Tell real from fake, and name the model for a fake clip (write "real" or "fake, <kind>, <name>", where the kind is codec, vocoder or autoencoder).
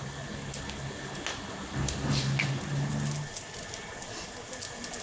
real